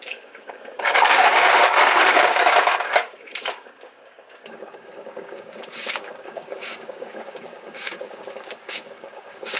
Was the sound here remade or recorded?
remade